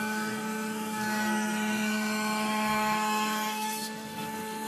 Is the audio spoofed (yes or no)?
yes